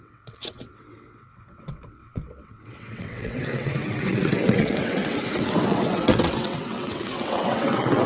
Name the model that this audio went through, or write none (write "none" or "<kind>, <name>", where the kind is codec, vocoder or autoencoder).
vocoder, WaveNeXt